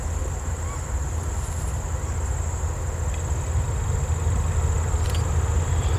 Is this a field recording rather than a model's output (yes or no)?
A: yes